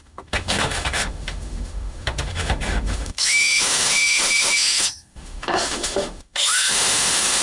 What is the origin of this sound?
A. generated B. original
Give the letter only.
A